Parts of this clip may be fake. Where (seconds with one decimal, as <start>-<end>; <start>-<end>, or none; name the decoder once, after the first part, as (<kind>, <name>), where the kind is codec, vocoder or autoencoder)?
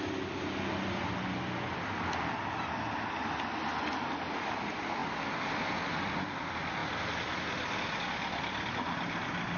none